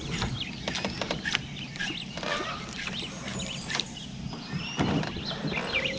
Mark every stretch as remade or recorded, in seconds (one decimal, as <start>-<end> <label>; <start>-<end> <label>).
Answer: 0.0-6.0 recorded